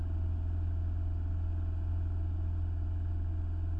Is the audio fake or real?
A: real